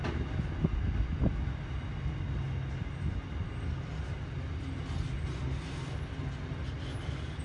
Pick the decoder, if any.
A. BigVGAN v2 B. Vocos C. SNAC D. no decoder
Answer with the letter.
D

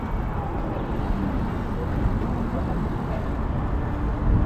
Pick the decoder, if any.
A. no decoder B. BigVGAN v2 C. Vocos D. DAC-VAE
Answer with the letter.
A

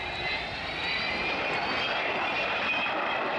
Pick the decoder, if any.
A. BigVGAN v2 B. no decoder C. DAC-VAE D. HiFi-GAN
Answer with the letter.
A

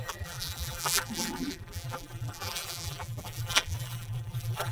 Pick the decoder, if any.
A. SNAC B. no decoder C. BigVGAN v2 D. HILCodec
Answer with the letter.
C